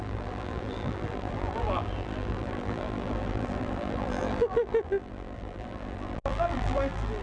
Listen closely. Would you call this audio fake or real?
fake